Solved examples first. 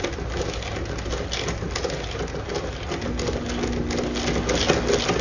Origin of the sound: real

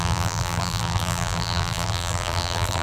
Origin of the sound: fake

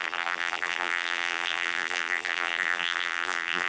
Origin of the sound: fake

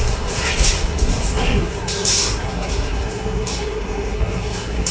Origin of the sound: fake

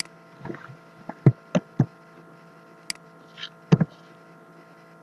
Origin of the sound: real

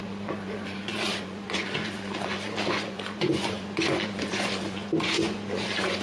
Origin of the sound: fake